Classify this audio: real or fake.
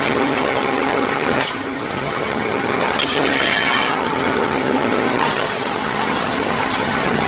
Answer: fake